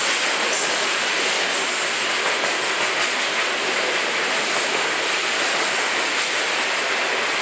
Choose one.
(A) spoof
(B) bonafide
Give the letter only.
B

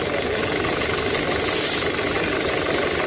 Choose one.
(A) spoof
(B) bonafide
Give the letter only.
B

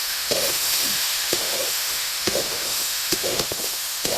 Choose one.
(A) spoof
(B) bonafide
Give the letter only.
A